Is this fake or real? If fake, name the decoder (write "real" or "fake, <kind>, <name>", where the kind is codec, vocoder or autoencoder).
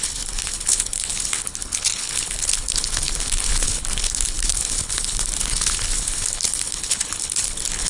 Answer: fake, codec, HILCodec